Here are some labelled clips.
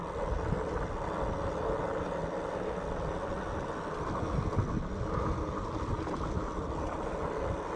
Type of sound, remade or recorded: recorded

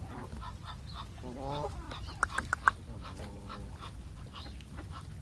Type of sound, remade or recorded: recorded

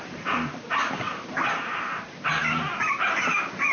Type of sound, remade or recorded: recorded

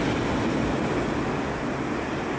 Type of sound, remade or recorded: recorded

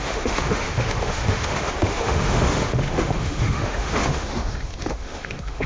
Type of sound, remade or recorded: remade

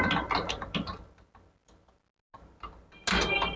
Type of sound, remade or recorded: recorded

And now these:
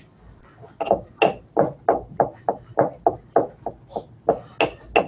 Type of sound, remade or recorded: recorded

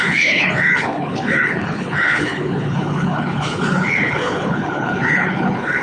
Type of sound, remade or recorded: remade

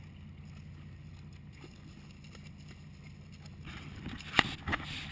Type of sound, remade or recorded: recorded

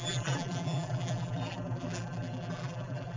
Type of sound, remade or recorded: remade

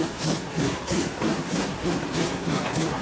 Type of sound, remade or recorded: remade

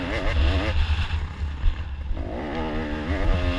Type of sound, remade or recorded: recorded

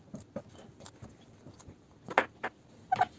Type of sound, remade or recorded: recorded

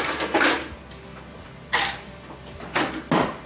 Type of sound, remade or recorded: recorded